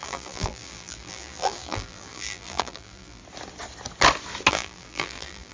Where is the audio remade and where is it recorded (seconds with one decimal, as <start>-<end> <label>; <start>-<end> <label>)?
0.0-3.2 remade; 3.2-4.5 recorded; 4.5-5.5 remade